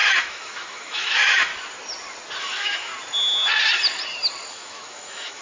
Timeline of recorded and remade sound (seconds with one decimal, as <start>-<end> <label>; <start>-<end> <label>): 0.0-1.5 remade; 1.5-2.4 recorded; 2.4-2.9 remade; 2.9-4.5 recorded; 4.5-5.4 remade